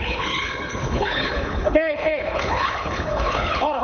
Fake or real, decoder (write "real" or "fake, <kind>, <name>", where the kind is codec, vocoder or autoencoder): fake, codec, HILCodec